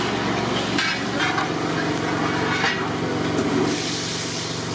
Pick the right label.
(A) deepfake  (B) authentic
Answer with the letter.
B